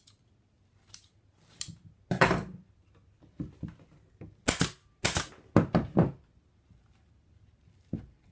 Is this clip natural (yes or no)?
yes